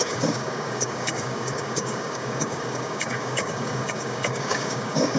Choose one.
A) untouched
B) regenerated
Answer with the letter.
B